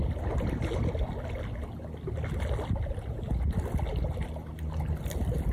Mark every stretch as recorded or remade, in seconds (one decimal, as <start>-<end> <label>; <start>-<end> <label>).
0.0-5.5 recorded